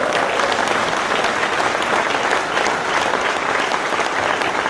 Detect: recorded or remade recorded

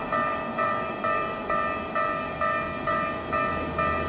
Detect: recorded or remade remade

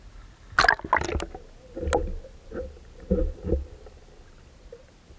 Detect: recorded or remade recorded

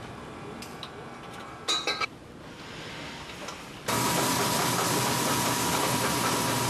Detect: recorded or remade recorded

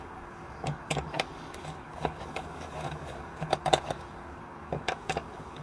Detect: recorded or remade remade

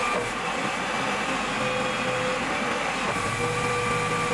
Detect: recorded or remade recorded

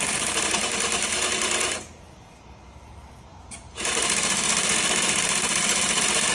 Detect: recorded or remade remade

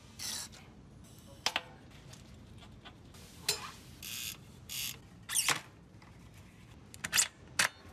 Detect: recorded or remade recorded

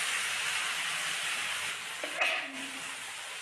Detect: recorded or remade recorded